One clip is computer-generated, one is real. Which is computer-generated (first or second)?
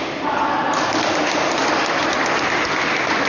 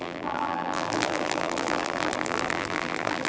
second